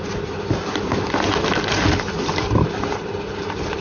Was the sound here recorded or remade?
recorded